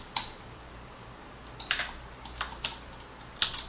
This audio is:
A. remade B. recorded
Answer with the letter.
B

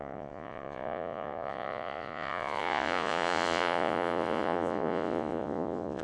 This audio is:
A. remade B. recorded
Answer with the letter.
A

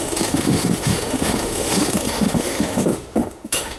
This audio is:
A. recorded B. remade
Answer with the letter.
B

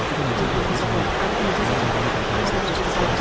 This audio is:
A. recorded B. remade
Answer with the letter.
A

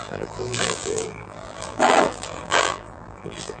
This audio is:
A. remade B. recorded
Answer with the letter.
A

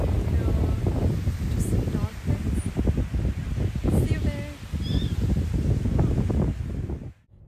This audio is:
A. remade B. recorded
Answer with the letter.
B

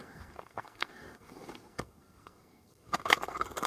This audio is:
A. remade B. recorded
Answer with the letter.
A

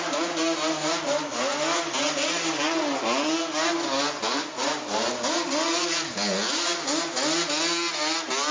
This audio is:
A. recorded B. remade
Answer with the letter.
A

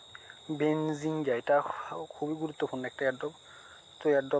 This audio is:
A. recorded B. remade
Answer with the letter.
A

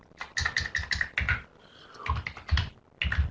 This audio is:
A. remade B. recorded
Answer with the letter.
B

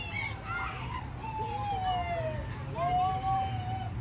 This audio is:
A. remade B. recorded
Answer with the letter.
B